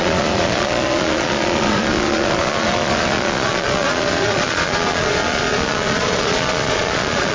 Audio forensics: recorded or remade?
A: remade